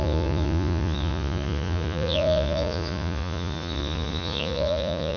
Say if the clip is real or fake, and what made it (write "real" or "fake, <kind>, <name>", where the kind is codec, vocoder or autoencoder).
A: fake, vocoder, Vocos